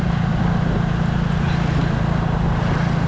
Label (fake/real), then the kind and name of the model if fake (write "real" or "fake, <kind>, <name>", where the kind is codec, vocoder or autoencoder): real